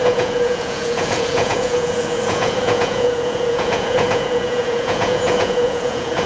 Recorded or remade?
remade